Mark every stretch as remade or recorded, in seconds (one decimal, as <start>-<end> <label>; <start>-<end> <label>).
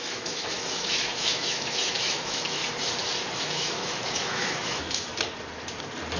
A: 0.0-2.6 remade; 2.6-3.4 recorded; 3.4-5.1 remade; 5.1-6.2 recorded